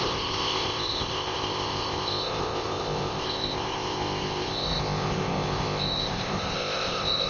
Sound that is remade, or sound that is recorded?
remade